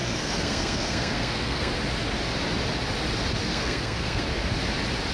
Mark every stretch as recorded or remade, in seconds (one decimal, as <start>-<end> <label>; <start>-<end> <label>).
0.0-1.7 remade; 1.7-3.4 recorded; 3.4-4.2 remade; 4.2-5.1 recorded